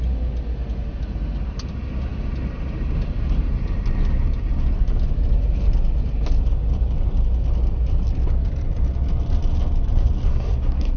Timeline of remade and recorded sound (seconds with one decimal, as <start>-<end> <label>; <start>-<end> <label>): 0.0-10.3 recorded; 10.3-11.0 remade